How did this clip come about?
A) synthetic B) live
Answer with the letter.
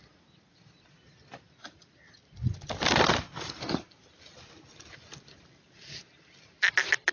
B